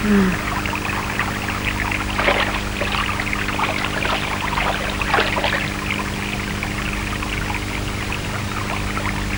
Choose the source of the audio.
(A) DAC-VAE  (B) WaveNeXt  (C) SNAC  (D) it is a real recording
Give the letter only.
D